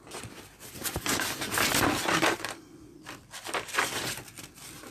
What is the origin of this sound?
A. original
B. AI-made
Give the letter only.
B